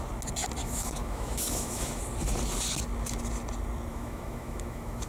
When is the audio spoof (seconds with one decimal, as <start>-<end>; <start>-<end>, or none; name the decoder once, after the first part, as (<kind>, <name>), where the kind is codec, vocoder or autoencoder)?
0.6-2.0 (autoencoder, DAC-VAE); 3.9-5.1